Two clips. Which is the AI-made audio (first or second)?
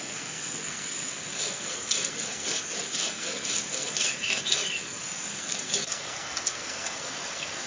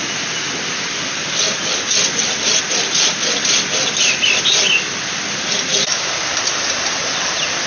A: first